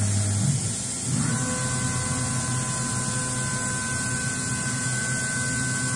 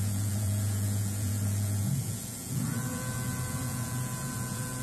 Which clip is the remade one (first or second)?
second